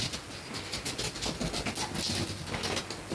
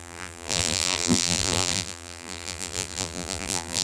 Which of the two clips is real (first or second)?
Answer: first